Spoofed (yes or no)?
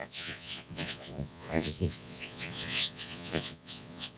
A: yes